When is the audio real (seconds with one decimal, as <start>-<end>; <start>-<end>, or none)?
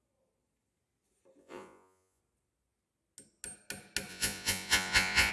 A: 0.0-1.4; 2.2-4.1